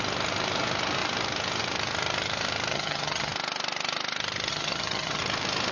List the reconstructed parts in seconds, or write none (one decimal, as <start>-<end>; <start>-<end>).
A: 2.7-3.3; 4.5-5.2